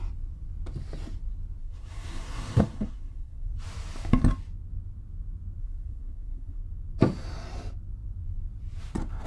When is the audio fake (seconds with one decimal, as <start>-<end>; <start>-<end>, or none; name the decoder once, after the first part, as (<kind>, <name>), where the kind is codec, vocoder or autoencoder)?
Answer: 1.6-3.5 (codec, SNAC); 5.6-6.6